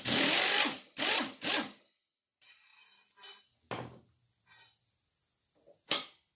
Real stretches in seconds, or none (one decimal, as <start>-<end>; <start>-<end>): 0.0-6.4